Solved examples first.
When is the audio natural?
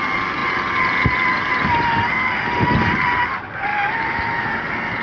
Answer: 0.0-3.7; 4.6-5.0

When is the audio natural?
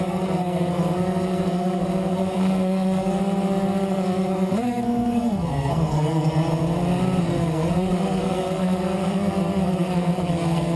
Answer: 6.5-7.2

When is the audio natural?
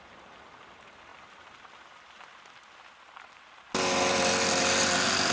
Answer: 0.0-5.3